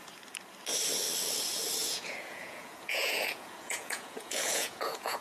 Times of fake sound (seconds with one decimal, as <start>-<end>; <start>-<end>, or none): 1.8-5.2